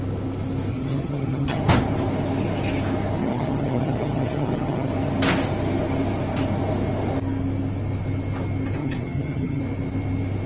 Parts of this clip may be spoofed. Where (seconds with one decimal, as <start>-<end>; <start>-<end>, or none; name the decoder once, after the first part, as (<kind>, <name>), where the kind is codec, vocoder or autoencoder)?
0.7-1.6 (vocoder, HiFi-GAN); 3.2-4.9; 8.8-9.6